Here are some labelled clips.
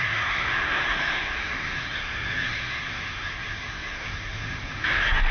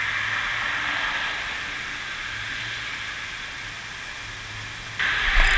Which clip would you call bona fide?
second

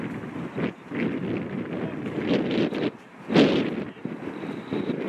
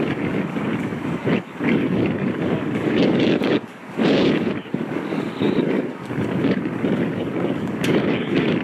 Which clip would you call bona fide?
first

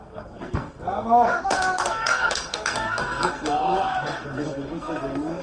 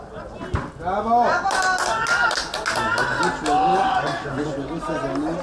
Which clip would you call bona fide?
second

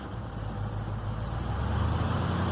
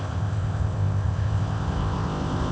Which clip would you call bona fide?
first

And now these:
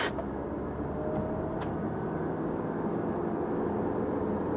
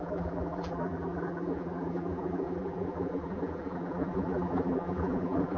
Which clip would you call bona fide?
first